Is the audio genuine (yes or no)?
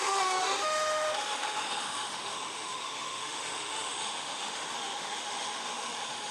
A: no